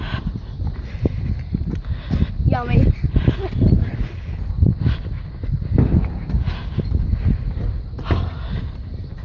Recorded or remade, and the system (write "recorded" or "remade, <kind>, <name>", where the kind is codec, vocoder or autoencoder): recorded